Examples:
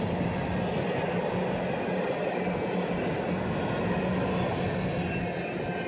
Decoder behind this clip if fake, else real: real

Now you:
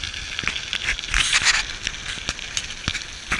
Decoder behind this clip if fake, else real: real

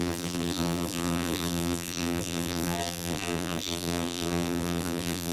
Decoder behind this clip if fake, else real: fake, vocoder, BigVGAN v2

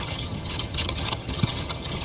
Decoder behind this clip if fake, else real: fake, vocoder, HiFi-GAN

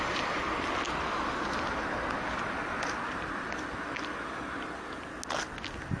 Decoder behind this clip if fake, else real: real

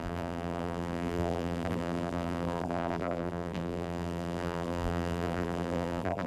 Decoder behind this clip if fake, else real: fake, vocoder, BigVGAN v2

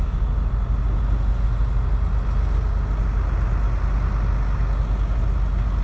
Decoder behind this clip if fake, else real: real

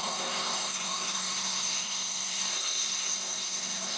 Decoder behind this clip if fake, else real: fake, codec, SNAC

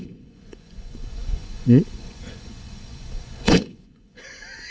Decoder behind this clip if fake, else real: fake, vocoder, Vocos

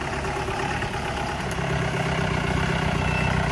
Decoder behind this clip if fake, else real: real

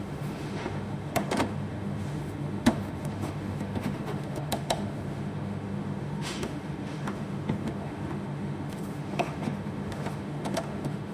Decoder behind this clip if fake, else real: fake, autoencoder, DAC-VAE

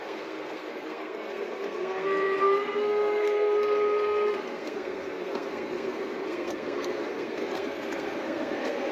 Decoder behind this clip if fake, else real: fake, codec, SNAC